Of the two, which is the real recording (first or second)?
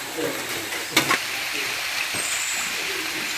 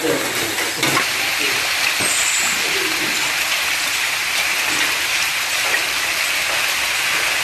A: second